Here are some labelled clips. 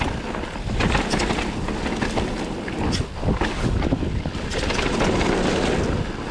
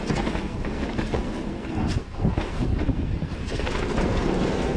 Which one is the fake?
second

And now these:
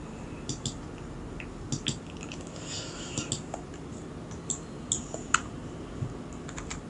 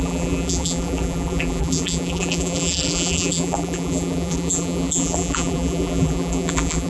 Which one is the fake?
second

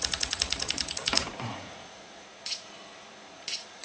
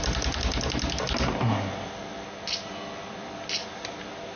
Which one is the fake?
first